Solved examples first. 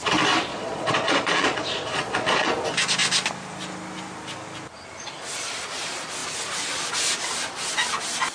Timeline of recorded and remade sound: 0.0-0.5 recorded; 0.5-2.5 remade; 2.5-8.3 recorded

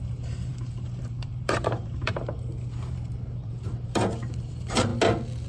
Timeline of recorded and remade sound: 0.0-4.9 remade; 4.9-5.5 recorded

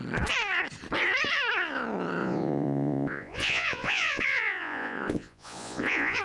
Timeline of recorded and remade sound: 0.0-2.2 recorded; 2.2-6.2 remade

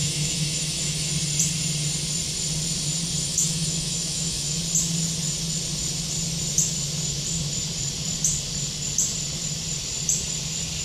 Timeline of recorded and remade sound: 0.0-1.1 remade; 1.1-3.3 recorded; 3.3-4.6 remade; 4.6-10.8 recorded

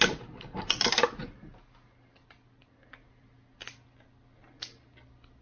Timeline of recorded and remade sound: 0.0-5.4 recorded